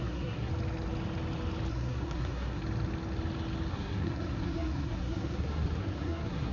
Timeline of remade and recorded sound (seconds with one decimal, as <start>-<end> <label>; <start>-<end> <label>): 0.0-0.5 remade; 0.5-1.7 recorded; 1.7-2.6 remade; 2.6-3.7 recorded; 3.7-6.5 remade